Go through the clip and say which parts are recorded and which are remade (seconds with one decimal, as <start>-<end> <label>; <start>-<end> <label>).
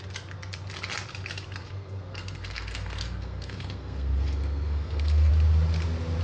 0.0-1.6 recorded; 1.6-5.3 remade; 5.3-6.2 recorded